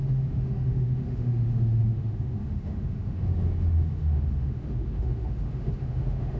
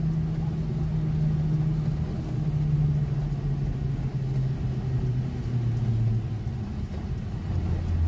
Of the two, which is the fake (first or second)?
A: first